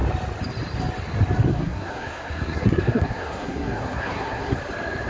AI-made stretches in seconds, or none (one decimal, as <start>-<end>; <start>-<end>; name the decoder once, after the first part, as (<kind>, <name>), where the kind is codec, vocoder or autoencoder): 1.5-4.6 (codec, SNAC)